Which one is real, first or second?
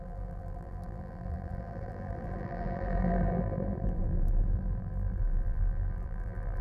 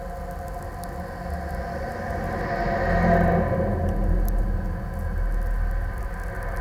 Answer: second